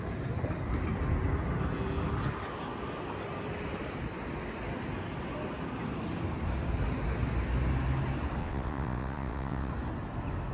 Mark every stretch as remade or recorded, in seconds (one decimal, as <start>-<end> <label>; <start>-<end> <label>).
0.0-8.4 recorded; 8.4-9.7 remade; 9.7-10.5 recorded